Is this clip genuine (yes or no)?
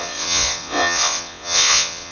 no